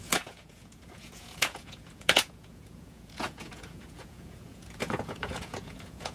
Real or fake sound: fake